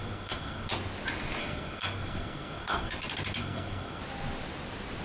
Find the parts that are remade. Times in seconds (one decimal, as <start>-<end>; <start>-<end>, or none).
0.0-0.7; 1.4-2.9; 3.4-4.0